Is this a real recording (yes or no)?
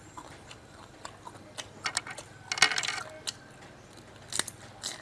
yes